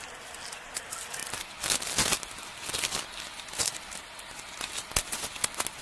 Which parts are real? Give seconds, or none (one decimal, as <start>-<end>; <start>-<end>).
0.0-5.8